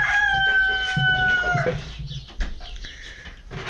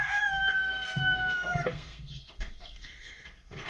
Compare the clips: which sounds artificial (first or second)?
second